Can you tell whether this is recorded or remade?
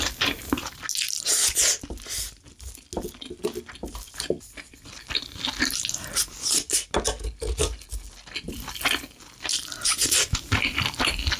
recorded